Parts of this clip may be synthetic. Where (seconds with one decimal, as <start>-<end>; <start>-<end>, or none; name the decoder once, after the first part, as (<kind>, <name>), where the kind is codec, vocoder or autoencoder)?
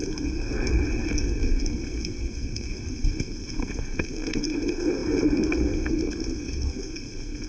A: 0.0-7.5 (codec, SNAC)